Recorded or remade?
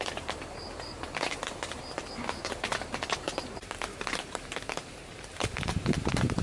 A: remade